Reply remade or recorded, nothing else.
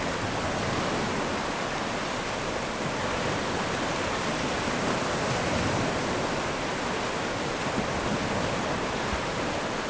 recorded